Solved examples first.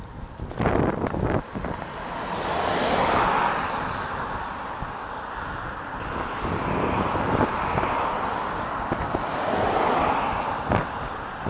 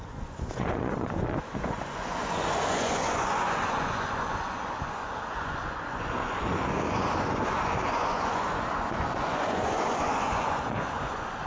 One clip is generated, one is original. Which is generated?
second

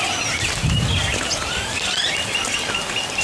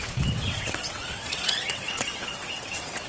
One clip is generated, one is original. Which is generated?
second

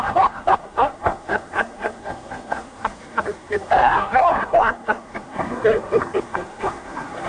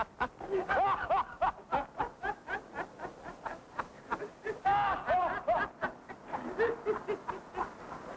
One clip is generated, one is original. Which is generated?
first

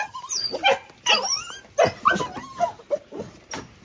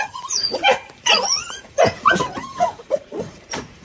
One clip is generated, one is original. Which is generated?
second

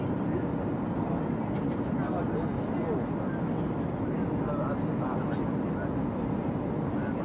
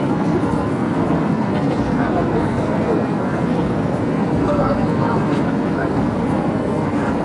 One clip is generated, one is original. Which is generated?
second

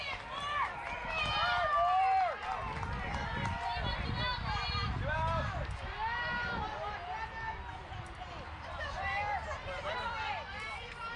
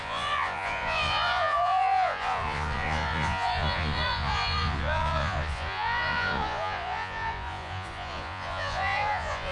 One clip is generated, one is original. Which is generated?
second